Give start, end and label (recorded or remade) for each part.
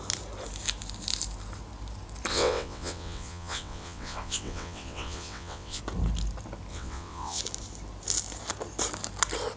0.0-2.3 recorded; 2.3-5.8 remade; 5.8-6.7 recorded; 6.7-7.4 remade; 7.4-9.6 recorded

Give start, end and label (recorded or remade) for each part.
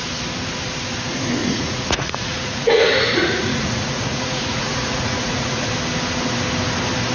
0.0-1.4 recorded; 1.4-5.7 remade; 5.7-7.1 recorded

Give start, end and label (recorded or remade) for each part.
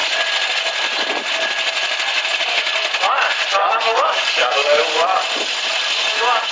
0.0-3.5 recorded; 3.5-4.8 remade; 4.8-6.5 recorded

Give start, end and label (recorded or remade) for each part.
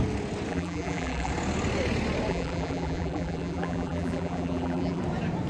0.0-0.5 recorded; 0.5-1.3 remade; 1.3-2.3 recorded; 2.3-5.0 remade; 5.0-5.5 recorded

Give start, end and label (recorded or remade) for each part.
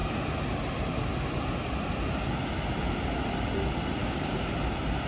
0.0-4.0 recorded; 4.0-4.5 remade; 4.5-5.1 recorded